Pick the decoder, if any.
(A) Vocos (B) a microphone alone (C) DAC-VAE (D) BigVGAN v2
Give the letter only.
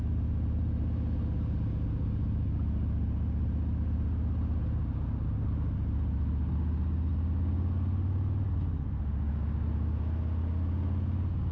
B